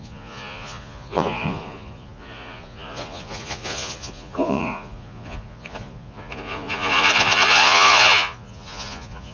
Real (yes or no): no